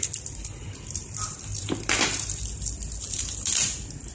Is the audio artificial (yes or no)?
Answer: yes